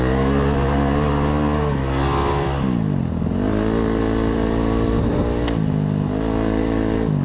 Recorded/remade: recorded